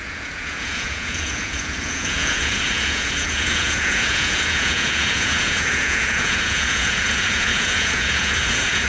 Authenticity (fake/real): fake